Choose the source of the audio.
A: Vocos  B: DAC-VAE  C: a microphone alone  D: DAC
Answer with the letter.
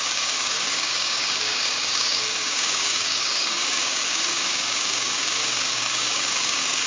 D